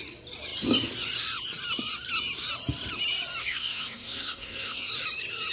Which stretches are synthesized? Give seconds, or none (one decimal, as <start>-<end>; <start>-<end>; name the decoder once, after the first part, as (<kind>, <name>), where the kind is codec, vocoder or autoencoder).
3.4-4.9 (codec, SNAC)